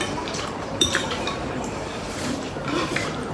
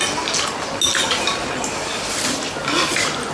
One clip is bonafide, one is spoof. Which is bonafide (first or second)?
second